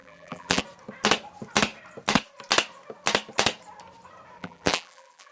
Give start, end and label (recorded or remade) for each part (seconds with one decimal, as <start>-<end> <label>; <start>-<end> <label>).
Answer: 0.0-0.6 remade; 0.6-4.4 recorded; 4.4-5.3 remade